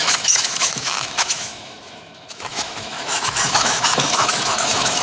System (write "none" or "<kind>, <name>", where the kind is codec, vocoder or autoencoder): autoencoder, DAC-VAE